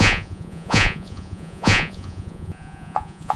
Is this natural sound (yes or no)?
no